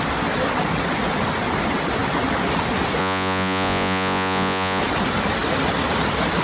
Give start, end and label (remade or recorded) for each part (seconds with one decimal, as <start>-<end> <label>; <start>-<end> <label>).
0.0-3.0 recorded; 3.0-4.8 remade; 4.8-6.4 recorded